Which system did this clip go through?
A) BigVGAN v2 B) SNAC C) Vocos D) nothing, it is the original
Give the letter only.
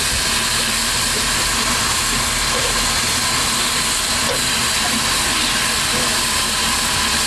D